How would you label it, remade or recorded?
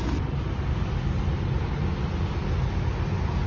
recorded